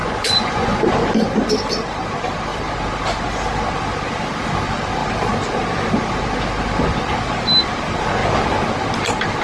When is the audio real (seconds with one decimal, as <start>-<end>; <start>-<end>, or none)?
0.9-9.4